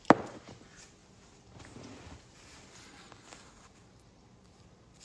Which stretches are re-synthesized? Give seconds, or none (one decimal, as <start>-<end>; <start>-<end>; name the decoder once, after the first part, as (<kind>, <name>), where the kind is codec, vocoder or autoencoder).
none